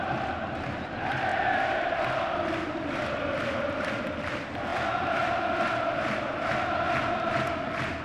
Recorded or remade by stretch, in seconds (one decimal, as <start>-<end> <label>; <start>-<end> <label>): 0.0-8.0 recorded